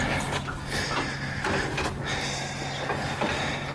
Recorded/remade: recorded